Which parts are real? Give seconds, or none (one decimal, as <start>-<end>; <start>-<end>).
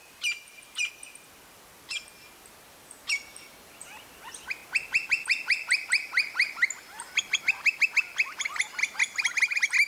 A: 0.9-9.9